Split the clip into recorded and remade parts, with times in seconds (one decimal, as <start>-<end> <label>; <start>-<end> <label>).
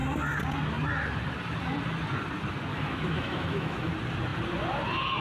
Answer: 0.0-2.7 recorded; 2.7-3.9 remade; 3.9-5.2 recorded